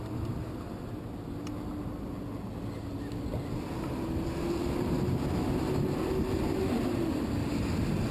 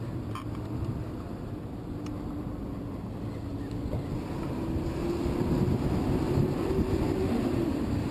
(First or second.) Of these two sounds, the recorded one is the first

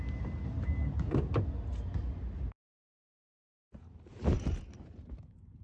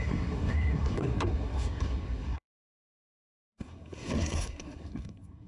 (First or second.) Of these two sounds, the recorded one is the first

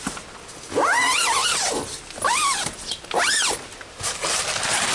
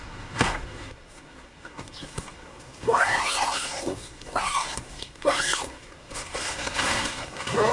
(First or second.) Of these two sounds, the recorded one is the first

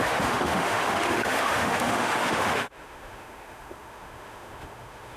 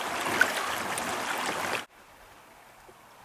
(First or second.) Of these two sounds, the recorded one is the second